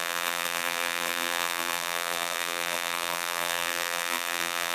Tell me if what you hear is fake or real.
fake